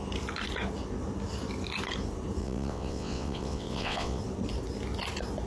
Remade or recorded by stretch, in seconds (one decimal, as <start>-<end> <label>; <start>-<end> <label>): 0.0-2.4 recorded; 2.4-4.2 remade; 4.2-5.5 recorded